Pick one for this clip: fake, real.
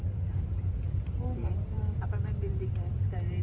fake